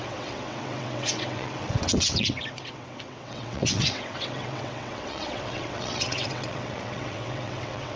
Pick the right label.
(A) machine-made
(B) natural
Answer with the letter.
A